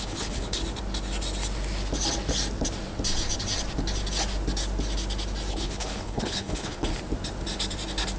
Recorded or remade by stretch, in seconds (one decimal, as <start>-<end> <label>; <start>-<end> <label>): 0.0-0.6 remade; 0.6-5.5 recorded; 5.5-6.9 remade; 6.9-8.2 recorded

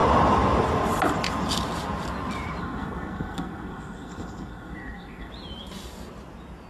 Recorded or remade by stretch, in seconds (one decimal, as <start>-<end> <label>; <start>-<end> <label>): 0.0-2.6 recorded; 2.6-5.3 remade; 5.3-6.7 recorded

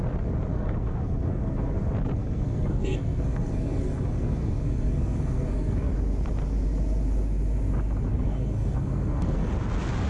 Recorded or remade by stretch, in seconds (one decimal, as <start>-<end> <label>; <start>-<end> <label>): 0.0-0.5 recorded; 0.5-1.8 remade; 1.8-2.2 recorded; 2.2-5.9 remade; 5.9-8.1 recorded; 8.1-9.5 remade; 9.5-10.1 recorded